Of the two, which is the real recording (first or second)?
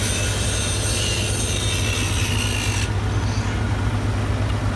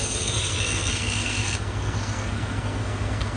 first